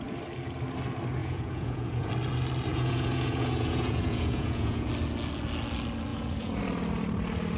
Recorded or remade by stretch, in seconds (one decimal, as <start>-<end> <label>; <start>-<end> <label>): 0.0-1.2 recorded; 1.2-2.1 remade; 2.1-2.7 recorded; 2.7-4.9 remade; 4.9-6.1 recorded; 6.1-6.6 remade; 6.6-7.6 recorded